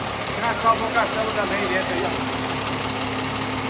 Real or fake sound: real